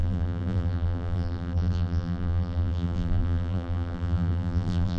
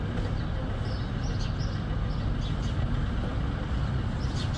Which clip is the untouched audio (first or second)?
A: second